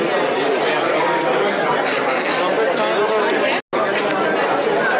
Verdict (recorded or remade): recorded